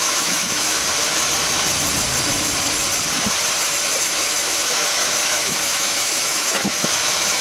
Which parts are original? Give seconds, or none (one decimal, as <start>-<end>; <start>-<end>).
0.8-4.0